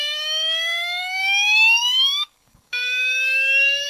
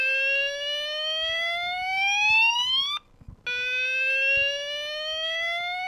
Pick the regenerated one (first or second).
first